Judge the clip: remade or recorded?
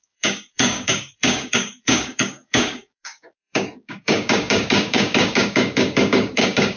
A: remade